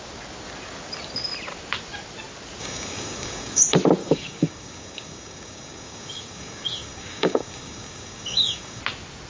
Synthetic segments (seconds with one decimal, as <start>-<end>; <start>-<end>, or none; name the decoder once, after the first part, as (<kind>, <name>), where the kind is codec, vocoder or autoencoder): 2.6-3.6 (codec, DAC); 4.0-8.8

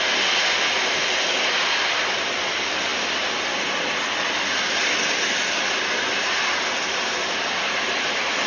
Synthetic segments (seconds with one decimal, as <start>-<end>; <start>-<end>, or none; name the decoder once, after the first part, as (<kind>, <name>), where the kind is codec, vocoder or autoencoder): none

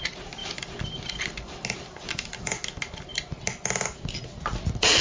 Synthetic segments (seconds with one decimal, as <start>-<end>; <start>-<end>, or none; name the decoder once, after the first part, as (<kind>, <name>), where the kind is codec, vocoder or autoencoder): none